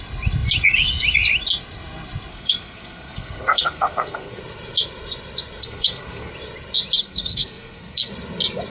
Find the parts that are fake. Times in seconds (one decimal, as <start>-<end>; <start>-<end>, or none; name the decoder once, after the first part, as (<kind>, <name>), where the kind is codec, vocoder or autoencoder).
2.3-4.4 (codec, SNAC); 5.6-6.3; 7.0-8.1